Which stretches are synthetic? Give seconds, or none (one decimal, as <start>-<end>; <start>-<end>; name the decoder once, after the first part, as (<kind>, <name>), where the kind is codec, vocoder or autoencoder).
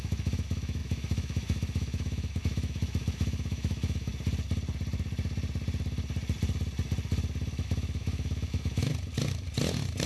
0.0-4.1 (autoencoder, DAC-VAE); 7.5-8.9